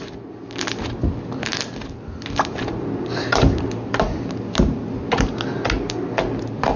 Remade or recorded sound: recorded